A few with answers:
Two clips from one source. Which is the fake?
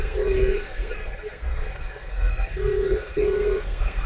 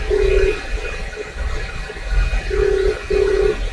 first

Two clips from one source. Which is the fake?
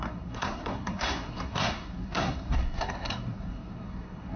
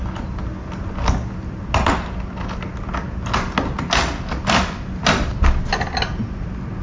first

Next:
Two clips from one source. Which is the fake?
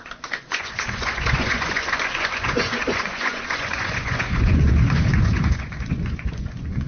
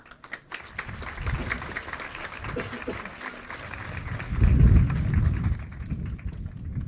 first